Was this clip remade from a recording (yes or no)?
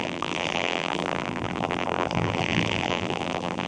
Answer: yes